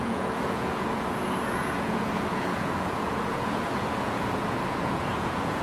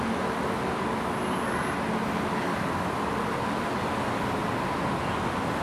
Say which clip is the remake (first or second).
first